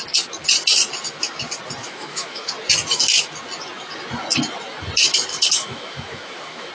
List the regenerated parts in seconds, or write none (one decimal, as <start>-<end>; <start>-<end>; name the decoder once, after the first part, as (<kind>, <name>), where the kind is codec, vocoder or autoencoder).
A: 1.8-2.5 (autoencoder, DAC-VAE); 5.3-6.7